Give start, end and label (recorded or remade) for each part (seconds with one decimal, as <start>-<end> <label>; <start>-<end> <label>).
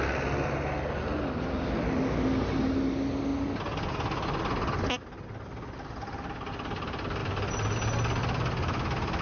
0.0-9.2 recorded